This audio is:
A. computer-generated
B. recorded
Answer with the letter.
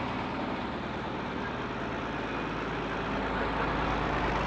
B